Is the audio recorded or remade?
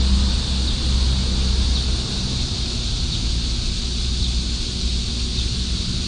recorded